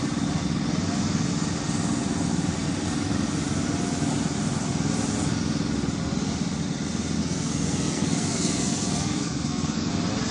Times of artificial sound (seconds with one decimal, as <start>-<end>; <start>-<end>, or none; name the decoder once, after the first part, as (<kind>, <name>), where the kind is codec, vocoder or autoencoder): 7.2-9.9 (codec, SNAC)